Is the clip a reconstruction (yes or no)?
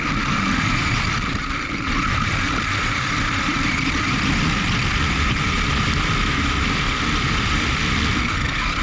yes